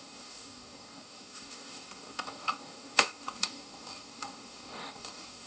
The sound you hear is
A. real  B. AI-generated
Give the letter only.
B